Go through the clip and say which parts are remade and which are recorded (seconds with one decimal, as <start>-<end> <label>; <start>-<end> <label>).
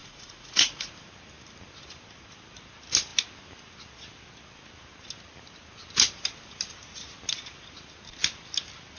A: 0.0-0.9 remade; 0.9-9.0 recorded